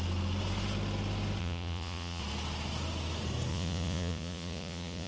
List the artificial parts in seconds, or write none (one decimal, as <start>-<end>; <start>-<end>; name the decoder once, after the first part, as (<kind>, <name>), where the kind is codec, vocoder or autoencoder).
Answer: 1.4-2.2 (vocoder, Vocos); 3.5-5.1